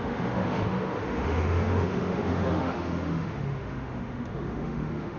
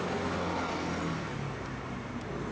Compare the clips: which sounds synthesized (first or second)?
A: first